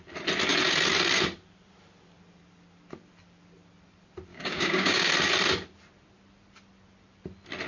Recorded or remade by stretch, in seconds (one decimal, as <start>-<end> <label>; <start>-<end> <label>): 0.0-4.3 recorded; 4.3-5.1 remade; 5.1-7.7 recorded